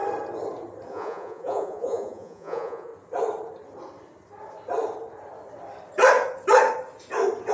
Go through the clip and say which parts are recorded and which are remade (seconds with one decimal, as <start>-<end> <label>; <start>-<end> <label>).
0.0-0.9 recorded; 0.9-2.9 remade; 2.9-7.5 recorded